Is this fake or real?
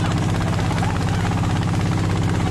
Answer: real